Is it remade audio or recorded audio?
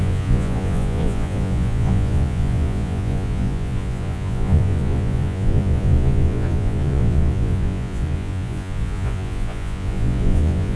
remade